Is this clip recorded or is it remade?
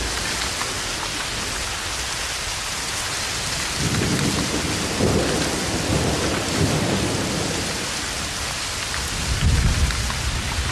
recorded